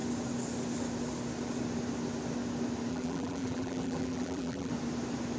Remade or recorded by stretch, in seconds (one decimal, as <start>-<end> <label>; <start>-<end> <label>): 0.0-2.9 recorded; 2.9-4.7 remade; 4.7-5.4 recorded